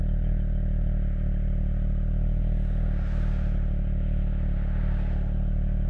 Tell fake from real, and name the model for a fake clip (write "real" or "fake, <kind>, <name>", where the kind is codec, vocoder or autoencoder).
real